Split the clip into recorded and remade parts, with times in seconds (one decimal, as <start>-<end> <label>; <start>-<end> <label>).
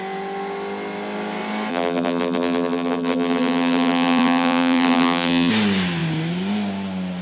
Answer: 0.0-1.7 recorded; 1.7-5.5 remade; 5.5-7.2 recorded